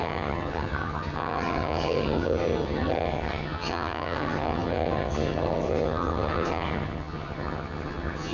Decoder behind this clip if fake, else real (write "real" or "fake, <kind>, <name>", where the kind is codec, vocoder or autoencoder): fake, vocoder, HiFi-GAN